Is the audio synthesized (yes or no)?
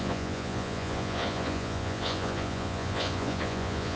yes